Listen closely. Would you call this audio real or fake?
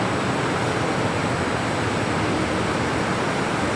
real